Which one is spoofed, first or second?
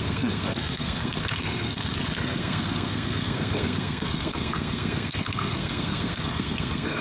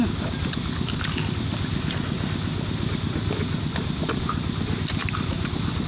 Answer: first